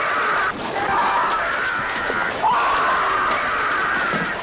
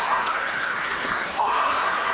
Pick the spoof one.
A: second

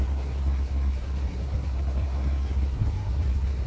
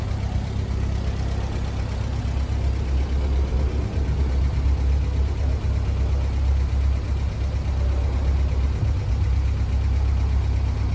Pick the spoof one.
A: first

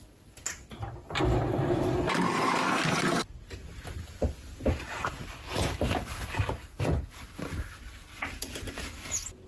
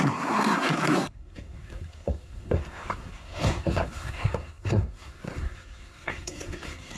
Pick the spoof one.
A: second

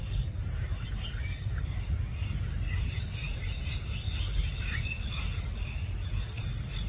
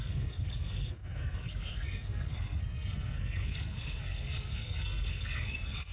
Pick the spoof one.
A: second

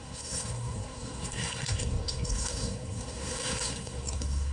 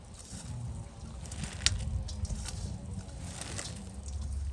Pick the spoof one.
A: first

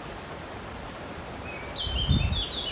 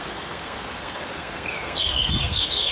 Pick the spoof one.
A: second